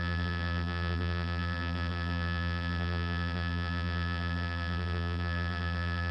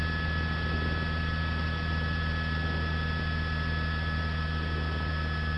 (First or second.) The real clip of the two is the second